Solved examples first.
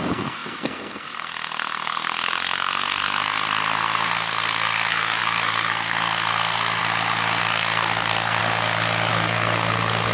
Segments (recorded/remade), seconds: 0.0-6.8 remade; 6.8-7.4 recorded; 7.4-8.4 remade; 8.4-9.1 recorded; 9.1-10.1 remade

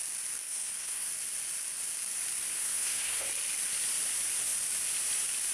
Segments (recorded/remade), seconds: 0.0-0.4 recorded; 0.4-1.1 remade; 1.1-2.5 recorded; 2.5-3.3 remade; 3.3-5.5 recorded

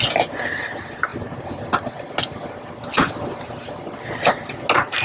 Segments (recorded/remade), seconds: 0.0-5.0 recorded

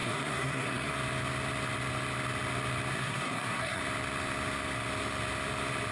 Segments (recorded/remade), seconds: 0.0-0.9 remade; 0.9-2.9 recorded; 2.9-3.8 remade; 3.8-5.9 recorded